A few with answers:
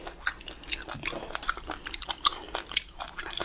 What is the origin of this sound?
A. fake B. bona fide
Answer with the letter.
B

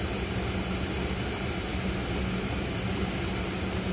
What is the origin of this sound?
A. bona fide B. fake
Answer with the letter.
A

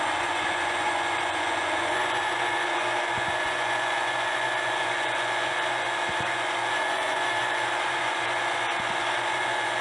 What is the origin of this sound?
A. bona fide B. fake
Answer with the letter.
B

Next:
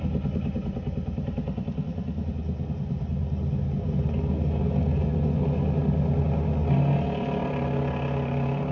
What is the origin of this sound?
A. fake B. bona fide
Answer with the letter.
B